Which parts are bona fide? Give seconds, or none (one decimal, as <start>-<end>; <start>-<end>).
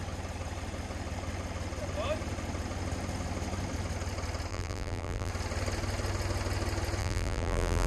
0.0-4.5; 5.3-7.0